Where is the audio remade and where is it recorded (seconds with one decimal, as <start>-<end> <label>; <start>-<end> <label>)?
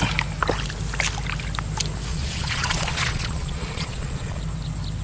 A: 0.0-2.1 recorded; 2.1-4.4 remade; 4.4-5.0 recorded